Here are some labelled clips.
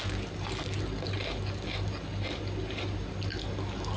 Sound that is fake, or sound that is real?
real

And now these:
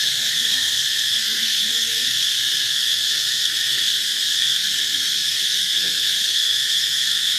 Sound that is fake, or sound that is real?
fake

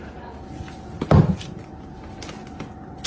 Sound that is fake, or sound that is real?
real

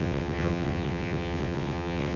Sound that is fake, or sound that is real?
fake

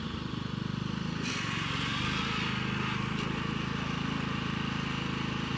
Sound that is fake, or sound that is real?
real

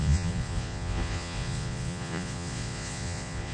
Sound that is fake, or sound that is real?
fake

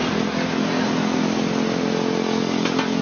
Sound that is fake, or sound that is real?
real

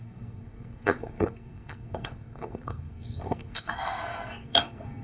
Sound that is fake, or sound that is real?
fake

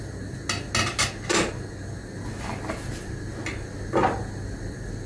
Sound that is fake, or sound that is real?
real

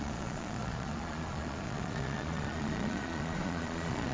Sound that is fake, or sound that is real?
fake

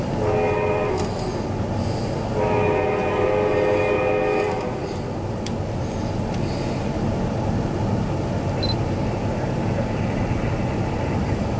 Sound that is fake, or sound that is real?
real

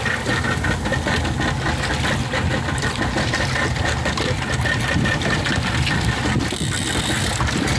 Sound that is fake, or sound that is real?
real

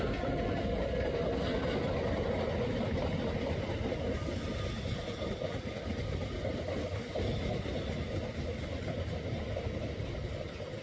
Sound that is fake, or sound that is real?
real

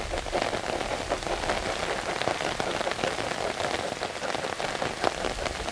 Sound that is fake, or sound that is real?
real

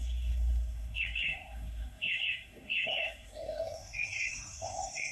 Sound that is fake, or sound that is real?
fake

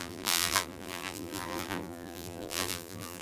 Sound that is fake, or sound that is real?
fake